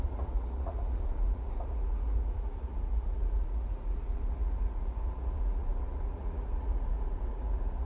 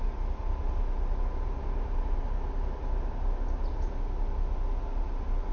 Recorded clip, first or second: second